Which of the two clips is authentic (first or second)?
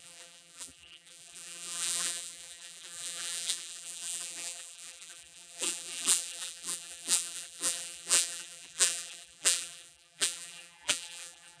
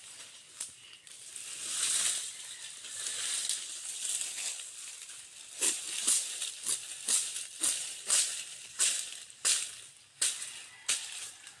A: second